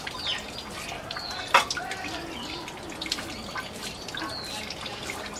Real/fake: real